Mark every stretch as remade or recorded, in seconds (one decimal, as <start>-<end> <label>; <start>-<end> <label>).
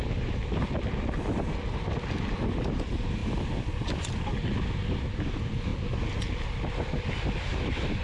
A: 0.0-8.0 recorded